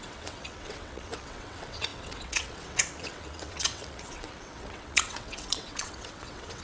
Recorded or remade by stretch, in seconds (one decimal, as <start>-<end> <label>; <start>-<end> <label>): 0.0-6.6 remade